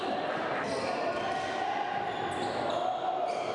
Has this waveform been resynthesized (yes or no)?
no